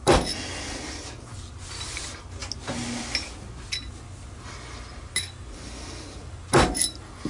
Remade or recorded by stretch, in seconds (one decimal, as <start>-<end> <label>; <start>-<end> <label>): 0.0-7.3 recorded